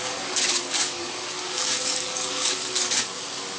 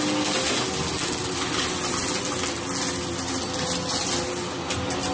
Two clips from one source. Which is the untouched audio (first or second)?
second